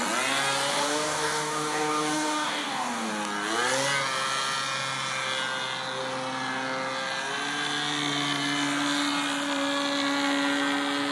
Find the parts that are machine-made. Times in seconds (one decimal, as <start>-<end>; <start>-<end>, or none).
0.7-3.1